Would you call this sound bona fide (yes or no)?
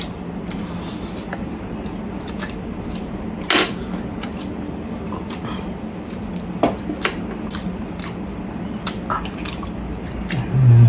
yes